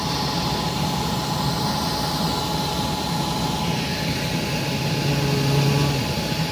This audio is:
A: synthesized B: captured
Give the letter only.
B